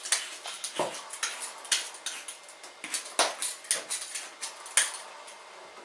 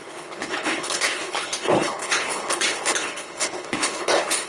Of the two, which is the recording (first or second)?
first